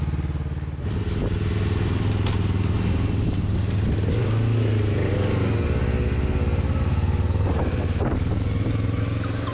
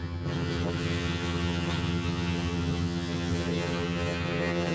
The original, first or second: first